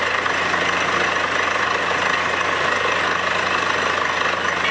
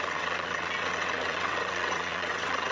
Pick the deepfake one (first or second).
second